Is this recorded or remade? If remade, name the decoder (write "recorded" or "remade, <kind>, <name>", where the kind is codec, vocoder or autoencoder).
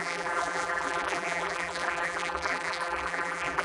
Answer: remade, vocoder, BigVGAN v2